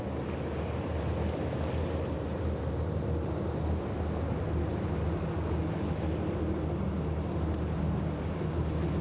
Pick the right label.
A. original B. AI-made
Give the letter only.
A